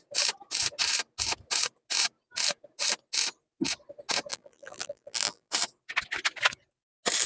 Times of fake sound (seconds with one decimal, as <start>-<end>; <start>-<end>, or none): 4.3-5.5